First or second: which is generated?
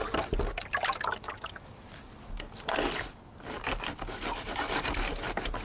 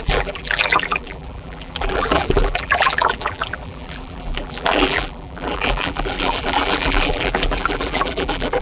second